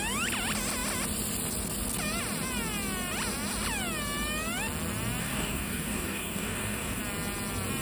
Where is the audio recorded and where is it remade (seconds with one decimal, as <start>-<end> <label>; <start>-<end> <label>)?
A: 0.0-5.2 recorded; 5.2-7.0 remade; 7.0-7.8 recorded